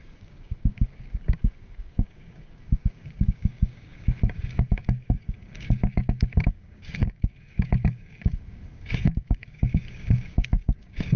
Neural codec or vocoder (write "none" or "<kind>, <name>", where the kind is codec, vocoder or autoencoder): codec, DAC